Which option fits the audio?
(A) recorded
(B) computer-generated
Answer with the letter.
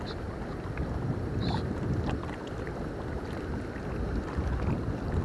A